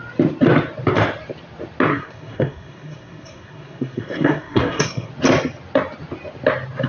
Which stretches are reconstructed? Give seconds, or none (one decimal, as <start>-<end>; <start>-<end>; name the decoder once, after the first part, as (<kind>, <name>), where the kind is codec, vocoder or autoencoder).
1.9-5.1 (codec, SNAC)